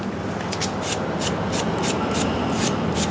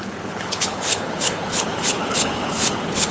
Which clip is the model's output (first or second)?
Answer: second